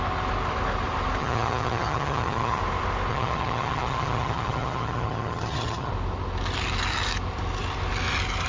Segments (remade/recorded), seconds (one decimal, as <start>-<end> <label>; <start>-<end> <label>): 0.0-1.2 recorded; 1.2-2.6 remade; 2.6-3.1 recorded; 3.1-5.9 remade; 5.9-8.5 recorded